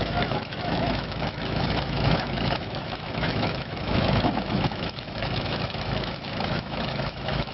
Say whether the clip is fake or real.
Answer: fake